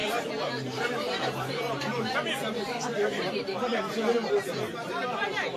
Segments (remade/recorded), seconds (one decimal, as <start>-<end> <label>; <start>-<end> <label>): 0.0-3.4 remade; 3.4-5.6 recorded